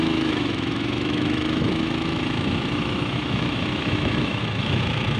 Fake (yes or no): yes